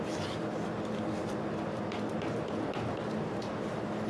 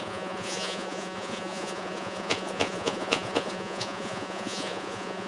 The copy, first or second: second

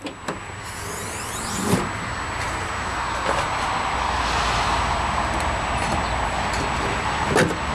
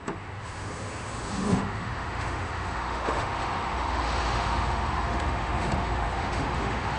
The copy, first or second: second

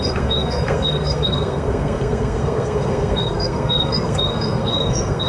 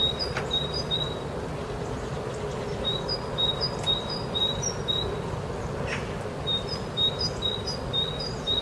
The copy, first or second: first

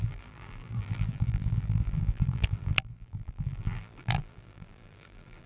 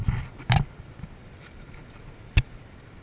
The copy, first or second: first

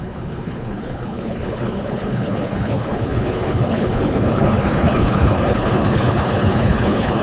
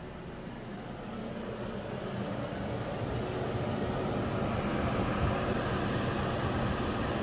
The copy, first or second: first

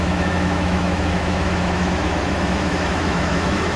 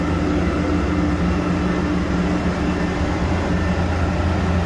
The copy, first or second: first